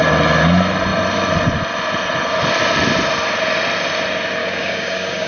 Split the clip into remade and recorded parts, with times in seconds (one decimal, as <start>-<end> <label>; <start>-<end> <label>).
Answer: 0.0-4.4 recorded; 4.4-5.3 remade